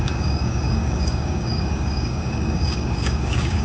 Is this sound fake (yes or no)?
yes